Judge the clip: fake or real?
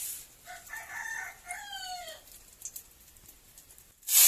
real